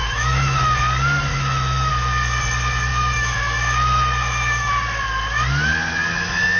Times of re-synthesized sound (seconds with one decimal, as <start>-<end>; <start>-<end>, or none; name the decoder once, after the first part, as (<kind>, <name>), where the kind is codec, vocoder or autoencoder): 0.0-0.8 (autoencoder, DAC-VAE); 1.3-1.9; 2.9-4.7